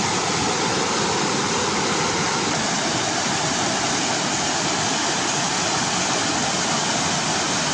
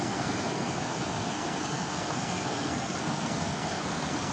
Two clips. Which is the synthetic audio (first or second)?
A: second